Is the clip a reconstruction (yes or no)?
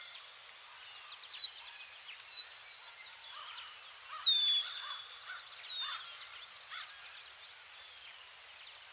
no